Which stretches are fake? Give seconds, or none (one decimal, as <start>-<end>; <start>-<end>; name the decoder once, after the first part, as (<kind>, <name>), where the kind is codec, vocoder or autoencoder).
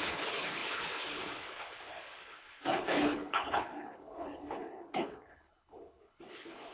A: 0.0-6.7 (codec, HILCodec)